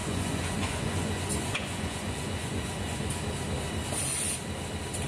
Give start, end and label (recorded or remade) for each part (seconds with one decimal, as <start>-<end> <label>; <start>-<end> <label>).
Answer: 0.0-3.1 remade; 3.1-5.1 recorded